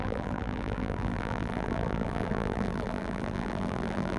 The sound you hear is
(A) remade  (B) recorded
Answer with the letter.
A